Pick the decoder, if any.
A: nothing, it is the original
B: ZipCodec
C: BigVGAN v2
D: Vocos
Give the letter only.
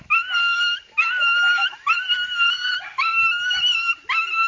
A